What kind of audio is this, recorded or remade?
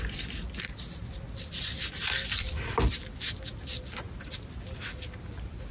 recorded